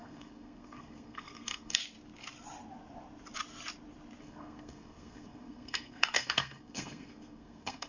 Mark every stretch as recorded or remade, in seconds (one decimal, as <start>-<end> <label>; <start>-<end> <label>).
0.0-1.8 remade; 1.8-4.2 recorded; 4.2-7.9 remade